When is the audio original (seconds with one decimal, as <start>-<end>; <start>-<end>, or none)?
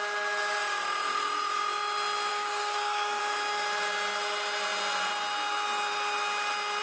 0.0-2.3; 3.2-6.8